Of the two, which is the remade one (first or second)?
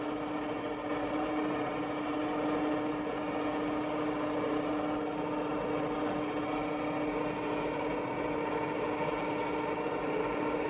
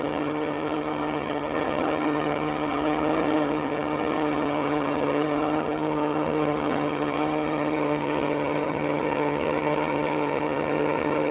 second